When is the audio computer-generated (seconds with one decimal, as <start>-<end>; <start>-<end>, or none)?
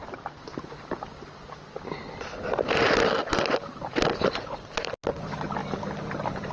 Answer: 5.6-6.5